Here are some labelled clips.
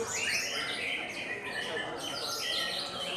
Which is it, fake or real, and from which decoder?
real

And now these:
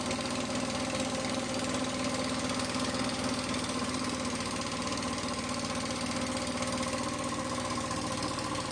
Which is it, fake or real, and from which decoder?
real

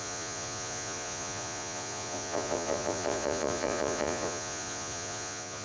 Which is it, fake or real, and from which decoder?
fake, vocoder, Vocos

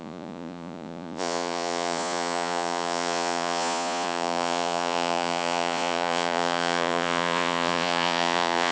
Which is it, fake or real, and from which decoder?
fake, vocoder, Vocos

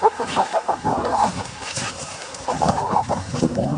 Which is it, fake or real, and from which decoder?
fake, codec, SNAC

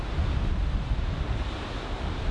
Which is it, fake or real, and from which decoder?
real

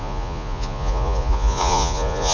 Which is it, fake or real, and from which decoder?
fake, vocoder, Vocos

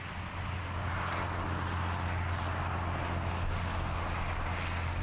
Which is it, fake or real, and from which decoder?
real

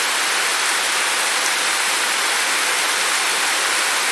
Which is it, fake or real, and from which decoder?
real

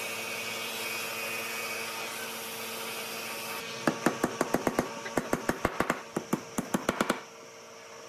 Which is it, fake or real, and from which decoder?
real